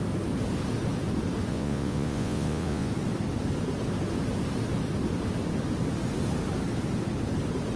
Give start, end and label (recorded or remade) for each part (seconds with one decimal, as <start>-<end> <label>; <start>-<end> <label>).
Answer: 0.0-1.5 recorded; 1.5-2.9 remade; 2.9-7.8 recorded